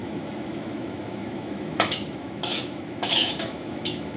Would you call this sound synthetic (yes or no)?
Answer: yes